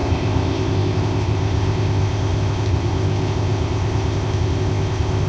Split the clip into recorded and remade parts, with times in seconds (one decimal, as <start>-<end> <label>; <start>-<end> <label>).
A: 0.0-5.3 remade